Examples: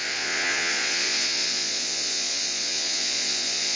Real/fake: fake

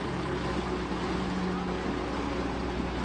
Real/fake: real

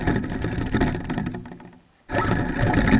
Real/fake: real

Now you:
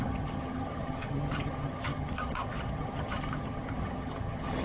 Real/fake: fake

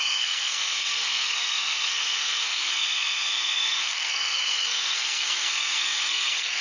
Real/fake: fake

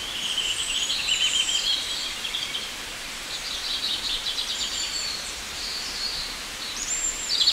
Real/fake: fake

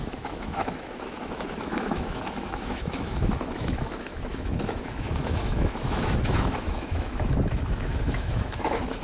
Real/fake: fake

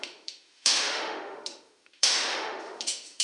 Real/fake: fake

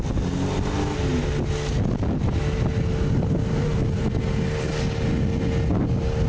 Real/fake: real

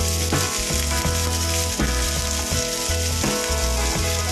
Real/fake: real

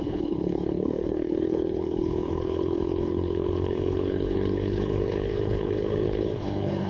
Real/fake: fake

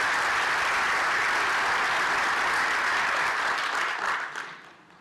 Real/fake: real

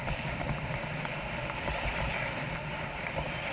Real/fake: fake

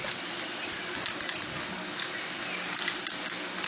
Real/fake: real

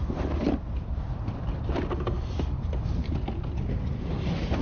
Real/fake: real